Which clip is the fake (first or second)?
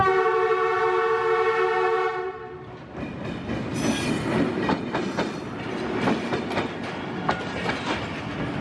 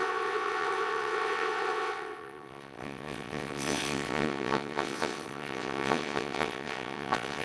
second